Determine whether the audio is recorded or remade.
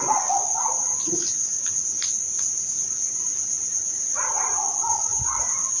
recorded